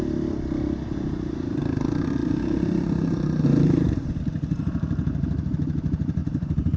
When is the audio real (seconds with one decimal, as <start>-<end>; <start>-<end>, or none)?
0.0-2.2; 4.2-6.2